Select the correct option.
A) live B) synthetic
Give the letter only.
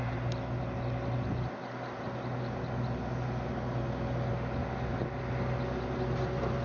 A